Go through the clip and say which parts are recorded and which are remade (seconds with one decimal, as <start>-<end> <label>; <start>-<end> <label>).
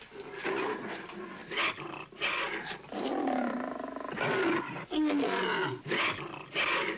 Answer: 0.0-7.0 recorded